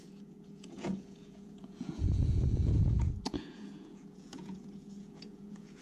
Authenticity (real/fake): fake